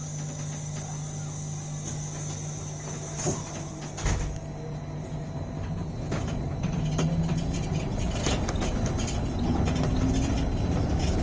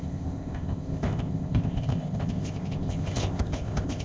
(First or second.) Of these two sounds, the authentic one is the first